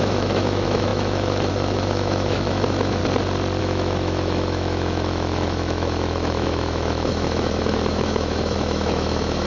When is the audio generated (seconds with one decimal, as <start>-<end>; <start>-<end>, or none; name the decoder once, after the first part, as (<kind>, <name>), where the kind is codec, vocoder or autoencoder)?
0.0-3.0 (autoencoder, DAC-VAE); 3.6-9.5